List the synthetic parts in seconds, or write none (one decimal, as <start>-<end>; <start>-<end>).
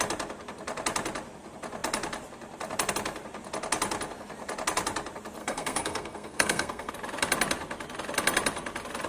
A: 5.4-6.9